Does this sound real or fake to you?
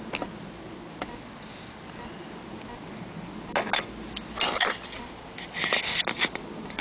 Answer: real